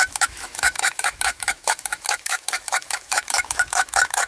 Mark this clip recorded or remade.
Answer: remade